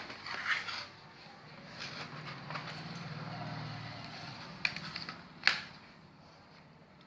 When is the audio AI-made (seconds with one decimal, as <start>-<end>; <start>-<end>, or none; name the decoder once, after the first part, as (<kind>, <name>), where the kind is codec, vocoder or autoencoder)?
none